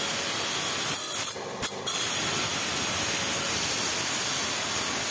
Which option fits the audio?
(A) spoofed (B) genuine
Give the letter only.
B